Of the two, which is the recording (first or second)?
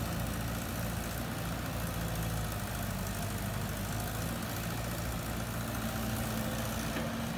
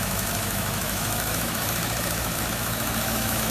first